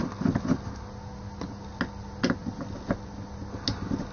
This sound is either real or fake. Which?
real